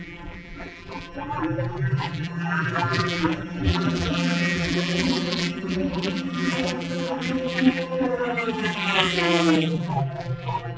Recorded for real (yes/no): no